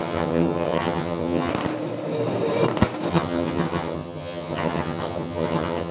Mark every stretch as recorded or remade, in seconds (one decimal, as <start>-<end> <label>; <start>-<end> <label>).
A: 0.0-1.5 remade; 1.5-3.1 recorded; 3.1-5.9 remade